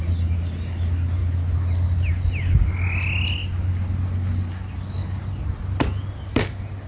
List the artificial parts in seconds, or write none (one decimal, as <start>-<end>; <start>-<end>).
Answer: none